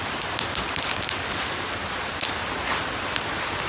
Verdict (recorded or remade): recorded